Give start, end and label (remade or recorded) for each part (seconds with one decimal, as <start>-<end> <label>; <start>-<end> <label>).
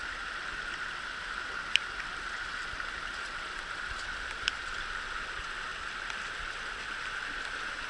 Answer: 0.0-7.9 recorded